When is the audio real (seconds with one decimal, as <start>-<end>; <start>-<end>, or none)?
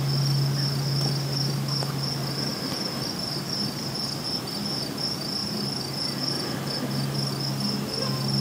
0.0-2.5; 4.3-5.4; 5.9-8.4